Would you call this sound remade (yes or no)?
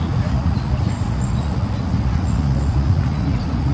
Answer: yes